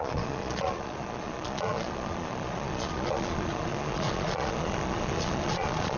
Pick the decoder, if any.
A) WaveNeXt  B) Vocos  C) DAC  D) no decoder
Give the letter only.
B